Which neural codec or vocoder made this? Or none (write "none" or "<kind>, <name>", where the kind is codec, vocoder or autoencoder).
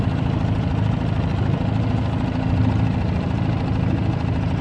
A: none